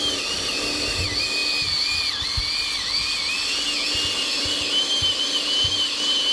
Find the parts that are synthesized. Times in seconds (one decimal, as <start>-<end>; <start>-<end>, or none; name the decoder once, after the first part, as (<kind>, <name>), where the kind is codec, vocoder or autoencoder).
none